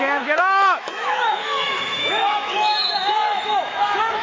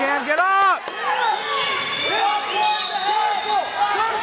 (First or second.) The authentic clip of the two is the second